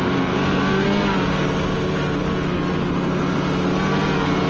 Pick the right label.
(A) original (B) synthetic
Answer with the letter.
A